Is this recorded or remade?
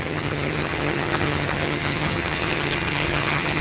remade